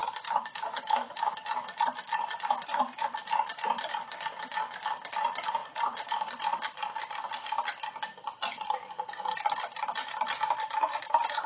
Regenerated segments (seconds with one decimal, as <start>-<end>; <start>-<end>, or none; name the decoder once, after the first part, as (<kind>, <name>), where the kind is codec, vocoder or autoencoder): 0.0-1.3 (codec, DAC)